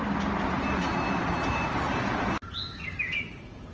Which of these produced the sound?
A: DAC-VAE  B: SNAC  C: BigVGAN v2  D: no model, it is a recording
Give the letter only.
D